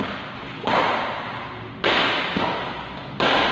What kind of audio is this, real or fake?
real